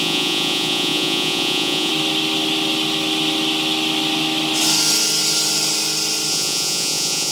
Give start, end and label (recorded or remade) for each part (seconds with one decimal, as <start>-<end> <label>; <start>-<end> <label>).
0.0-1.9 remade; 1.9-6.3 recorded; 6.3-7.3 remade